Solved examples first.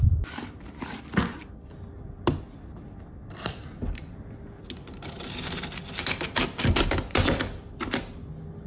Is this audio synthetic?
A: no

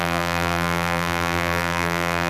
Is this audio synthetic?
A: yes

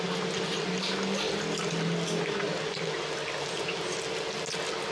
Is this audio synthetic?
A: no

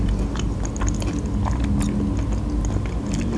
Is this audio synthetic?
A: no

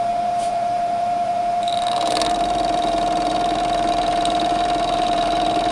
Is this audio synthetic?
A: yes